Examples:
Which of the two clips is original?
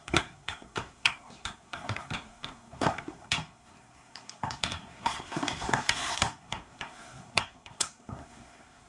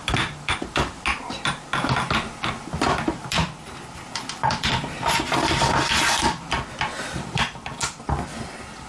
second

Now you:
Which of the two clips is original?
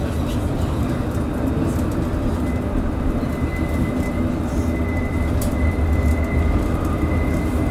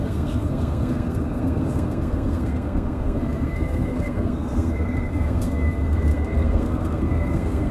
first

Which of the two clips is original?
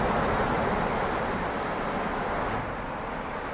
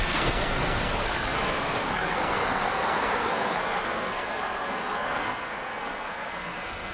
first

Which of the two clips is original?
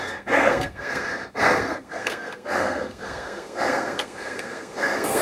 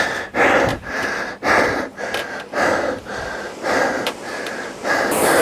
second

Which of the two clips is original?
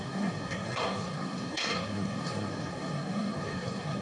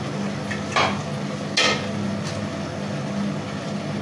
second